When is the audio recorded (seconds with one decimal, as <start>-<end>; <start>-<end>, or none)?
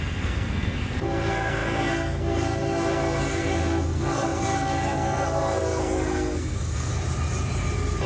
6.9-8.1